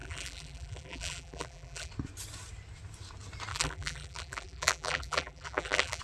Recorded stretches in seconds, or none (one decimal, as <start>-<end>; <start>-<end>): 1.9-3.5